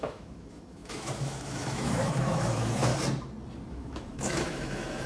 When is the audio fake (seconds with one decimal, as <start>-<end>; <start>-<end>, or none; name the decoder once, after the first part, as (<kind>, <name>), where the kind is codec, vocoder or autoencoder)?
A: 0.0-2.9 (autoencoder, DAC-VAE); 3.7-5.1